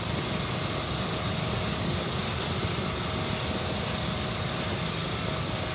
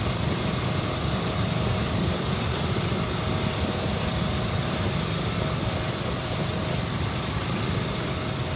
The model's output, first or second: second